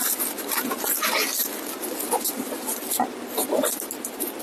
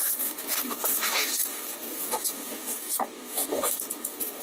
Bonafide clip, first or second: first